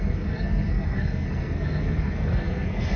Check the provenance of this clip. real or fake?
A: fake